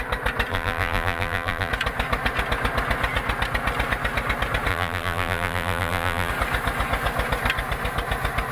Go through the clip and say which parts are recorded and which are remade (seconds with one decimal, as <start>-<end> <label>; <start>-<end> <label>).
0.0-0.5 recorded; 0.5-1.7 remade; 1.7-4.7 recorded; 4.7-6.3 remade; 6.3-8.5 recorded